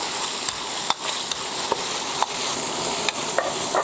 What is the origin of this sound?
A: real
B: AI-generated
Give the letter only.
B